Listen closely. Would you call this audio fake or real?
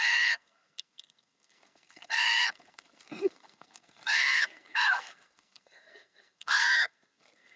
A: fake